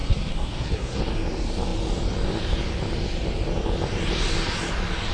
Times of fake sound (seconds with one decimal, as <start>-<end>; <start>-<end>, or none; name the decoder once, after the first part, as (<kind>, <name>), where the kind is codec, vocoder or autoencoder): 0.0-1.0 (codec, SNAC)

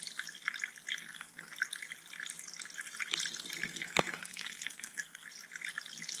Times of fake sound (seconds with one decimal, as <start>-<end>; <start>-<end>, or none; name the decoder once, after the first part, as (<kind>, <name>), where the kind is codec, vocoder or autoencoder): 1.0-1.5 (codec, SNAC); 3.7-5.3

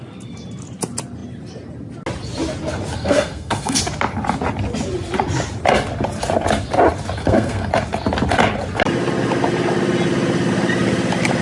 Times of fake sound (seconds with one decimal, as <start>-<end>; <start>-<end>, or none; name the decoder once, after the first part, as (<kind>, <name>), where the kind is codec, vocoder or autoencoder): 3.0-3.8 (codec, SNAC); 7.2-7.7

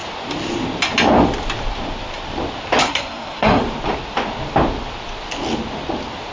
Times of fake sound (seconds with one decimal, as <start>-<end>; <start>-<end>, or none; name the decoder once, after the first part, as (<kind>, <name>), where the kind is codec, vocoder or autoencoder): 2.8-3.6 (codec, SNAC)

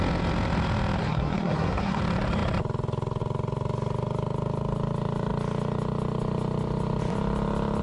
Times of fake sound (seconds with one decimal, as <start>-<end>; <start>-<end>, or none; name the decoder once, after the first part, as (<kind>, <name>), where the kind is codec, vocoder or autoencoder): 1.0-2.0 (codec, SNAC)

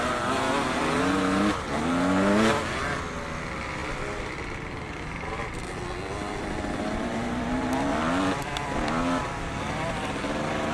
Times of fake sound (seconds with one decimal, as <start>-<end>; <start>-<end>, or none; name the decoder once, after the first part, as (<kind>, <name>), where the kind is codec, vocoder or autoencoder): none